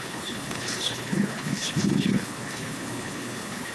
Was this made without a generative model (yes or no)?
no